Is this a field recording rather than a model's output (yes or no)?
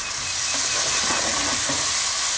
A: yes